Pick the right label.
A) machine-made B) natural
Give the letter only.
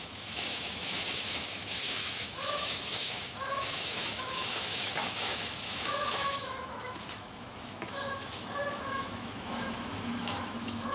A